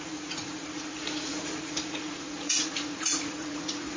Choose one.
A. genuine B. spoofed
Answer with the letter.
B